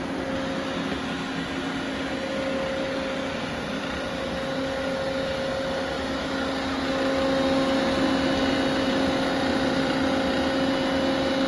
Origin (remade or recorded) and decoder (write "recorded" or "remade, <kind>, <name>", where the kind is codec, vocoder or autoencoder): recorded